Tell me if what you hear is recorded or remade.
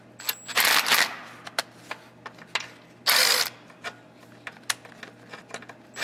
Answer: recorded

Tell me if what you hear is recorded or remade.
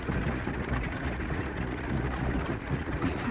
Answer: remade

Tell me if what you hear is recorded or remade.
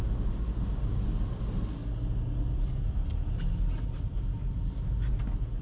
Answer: recorded